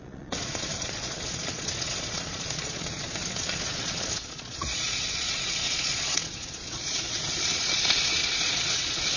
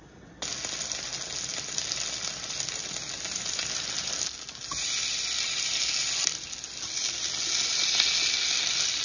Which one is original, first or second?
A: second